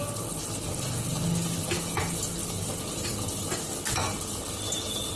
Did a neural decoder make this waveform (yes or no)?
no